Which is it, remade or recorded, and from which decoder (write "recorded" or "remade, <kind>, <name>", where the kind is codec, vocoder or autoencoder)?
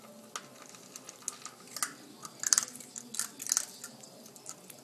recorded